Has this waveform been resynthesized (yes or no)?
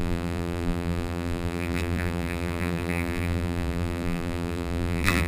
yes